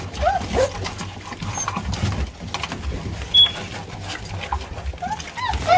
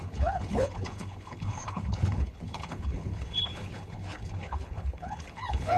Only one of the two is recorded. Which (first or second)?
first